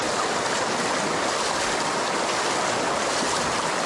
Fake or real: real